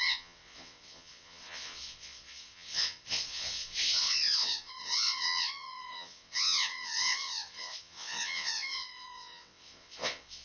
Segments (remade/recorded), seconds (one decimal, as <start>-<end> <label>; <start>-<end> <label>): 0.0-10.4 remade